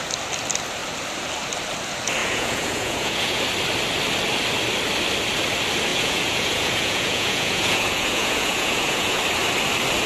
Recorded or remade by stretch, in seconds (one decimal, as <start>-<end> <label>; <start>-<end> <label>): 0.0-2.2 recorded; 2.2-3.4 remade; 3.4-5.9 recorded; 5.9-9.2 remade; 9.2-10.1 recorded